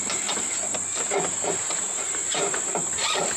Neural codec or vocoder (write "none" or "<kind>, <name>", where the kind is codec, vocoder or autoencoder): vocoder, BigVGAN v2